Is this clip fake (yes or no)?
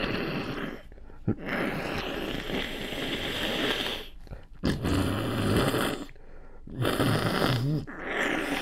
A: no